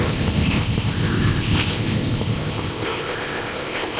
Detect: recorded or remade remade